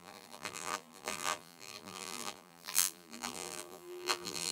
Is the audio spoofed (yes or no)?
yes